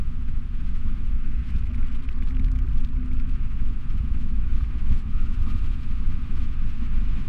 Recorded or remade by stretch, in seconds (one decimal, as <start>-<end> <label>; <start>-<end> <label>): 0.0-1.5 remade; 1.5-3.3 recorded; 3.3-7.3 remade